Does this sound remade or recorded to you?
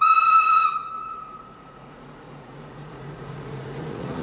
remade